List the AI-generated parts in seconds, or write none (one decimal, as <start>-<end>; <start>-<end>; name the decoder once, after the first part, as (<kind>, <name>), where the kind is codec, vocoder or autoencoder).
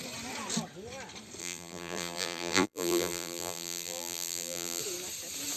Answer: 1.4-4.8 (vocoder, BigVGAN v2)